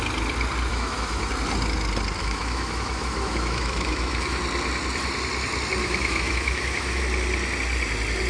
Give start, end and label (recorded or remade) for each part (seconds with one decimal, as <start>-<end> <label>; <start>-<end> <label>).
0.0-0.7 recorded; 0.7-1.3 remade; 1.3-2.2 recorded; 2.2-4.4 remade; 4.4-5.8 recorded; 5.8-7.0 remade; 7.0-8.3 recorded